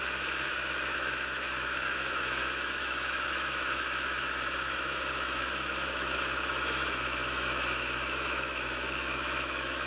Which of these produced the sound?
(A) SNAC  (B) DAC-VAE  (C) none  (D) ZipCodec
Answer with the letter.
B